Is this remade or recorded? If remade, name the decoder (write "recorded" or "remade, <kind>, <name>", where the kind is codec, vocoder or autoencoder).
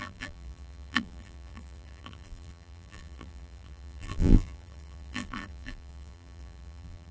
remade, vocoder, BigVGAN v2